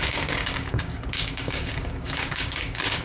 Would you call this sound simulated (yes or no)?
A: yes